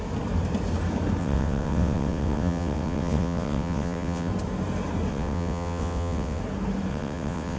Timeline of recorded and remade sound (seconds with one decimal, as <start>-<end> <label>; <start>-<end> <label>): 0.0-1.2 recorded; 1.2-4.3 remade; 4.3-5.1 recorded; 5.1-6.4 remade; 6.4-6.9 recorded; 6.9-7.6 remade

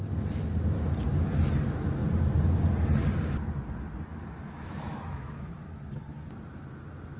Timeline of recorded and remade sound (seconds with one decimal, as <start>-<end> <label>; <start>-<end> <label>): 0.0-4.1 recorded; 4.1-5.5 remade; 5.5-7.2 recorded

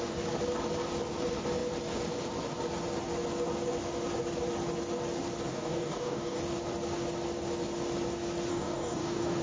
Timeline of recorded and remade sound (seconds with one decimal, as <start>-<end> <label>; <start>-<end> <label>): 0.0-5.5 recorded; 5.5-6.4 remade; 6.4-8.5 recorded; 8.5-9.4 remade

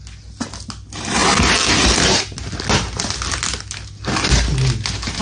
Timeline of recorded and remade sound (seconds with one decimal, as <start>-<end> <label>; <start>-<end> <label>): 0.0-5.2 recorded

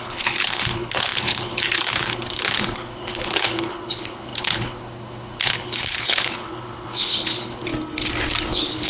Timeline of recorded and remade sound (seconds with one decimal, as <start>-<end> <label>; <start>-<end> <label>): 0.0-7.7 remade; 7.7-8.5 recorded; 8.5-8.9 remade